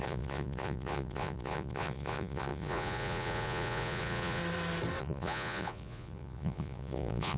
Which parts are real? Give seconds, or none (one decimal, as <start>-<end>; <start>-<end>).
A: 4.4-5.0